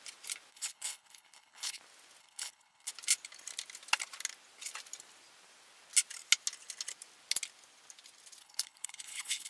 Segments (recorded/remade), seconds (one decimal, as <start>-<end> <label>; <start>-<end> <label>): 0.0-0.5 recorded; 0.5-1.8 remade; 1.8-2.2 recorded; 2.2-2.9 remade; 2.9-8.4 recorded; 8.4-9.5 remade